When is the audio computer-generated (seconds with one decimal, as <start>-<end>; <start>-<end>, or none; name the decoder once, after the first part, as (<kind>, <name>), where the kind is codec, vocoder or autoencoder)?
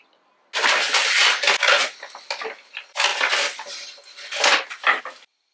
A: none